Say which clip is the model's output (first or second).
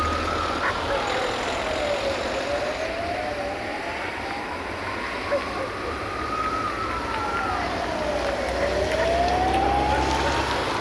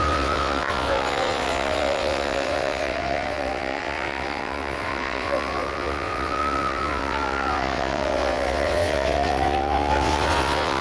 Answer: second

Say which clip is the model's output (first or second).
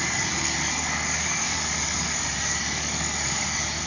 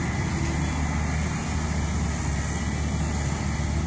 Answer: first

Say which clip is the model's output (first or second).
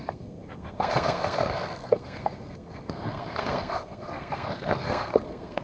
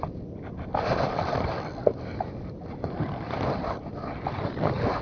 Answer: first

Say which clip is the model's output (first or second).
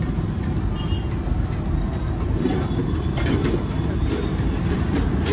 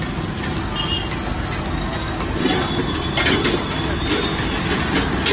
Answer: first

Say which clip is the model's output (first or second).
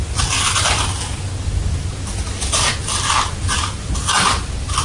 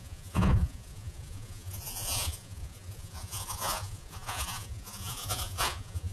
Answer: second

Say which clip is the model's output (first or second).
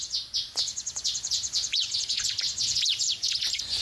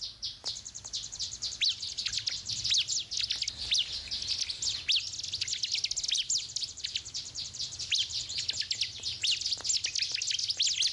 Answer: first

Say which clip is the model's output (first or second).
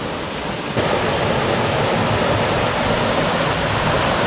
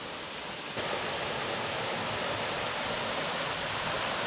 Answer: second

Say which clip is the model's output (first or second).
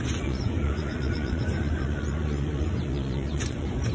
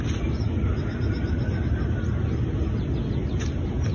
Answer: first